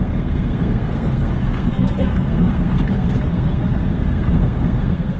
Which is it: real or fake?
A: fake